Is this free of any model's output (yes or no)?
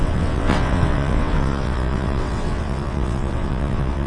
no